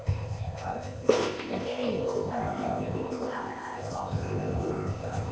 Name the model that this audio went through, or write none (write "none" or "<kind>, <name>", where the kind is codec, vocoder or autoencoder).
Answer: codec, ZipCodec